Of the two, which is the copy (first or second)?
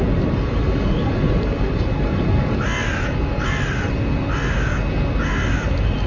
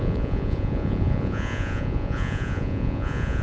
second